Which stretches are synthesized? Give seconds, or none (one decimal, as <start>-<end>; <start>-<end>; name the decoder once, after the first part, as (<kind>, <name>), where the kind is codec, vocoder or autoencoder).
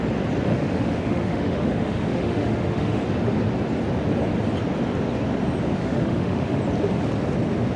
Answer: 0.5-3.0 (autoencoder, DAC-VAE); 5.8-6.6